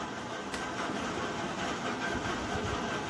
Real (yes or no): yes